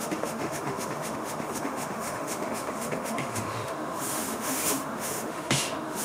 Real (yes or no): no